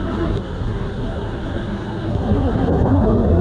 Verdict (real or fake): fake